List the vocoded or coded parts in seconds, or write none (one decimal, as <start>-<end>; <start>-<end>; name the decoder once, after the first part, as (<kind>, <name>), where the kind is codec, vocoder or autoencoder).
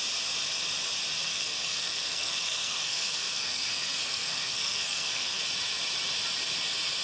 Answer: 1.2-5.4 (codec, SNAC)